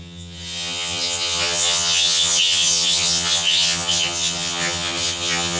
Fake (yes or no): yes